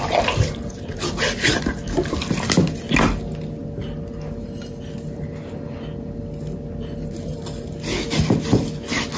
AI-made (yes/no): no